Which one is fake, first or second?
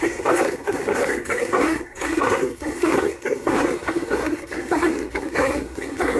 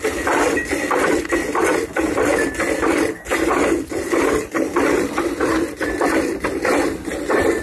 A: first